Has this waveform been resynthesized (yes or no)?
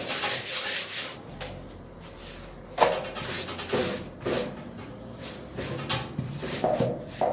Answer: no